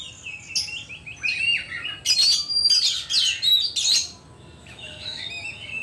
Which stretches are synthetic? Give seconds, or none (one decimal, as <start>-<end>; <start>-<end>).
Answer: 4.6-5.2